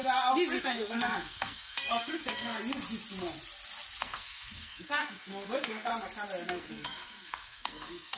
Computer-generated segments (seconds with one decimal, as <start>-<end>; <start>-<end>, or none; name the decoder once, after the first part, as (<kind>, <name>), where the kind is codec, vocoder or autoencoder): 0.6-2.6 (codec, SNAC); 4.0-5.9; 6.5-8.2